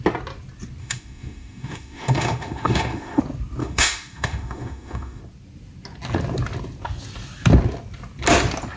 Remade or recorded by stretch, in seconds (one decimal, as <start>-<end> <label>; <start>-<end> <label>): 0.0-0.8 recorded; 0.8-3.2 remade; 3.2-3.6 recorded; 3.6-5.2 remade; 5.2-8.8 recorded